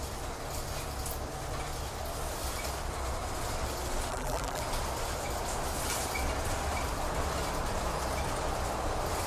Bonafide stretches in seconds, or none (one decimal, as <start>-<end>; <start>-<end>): 0.0-4.1; 4.6-9.3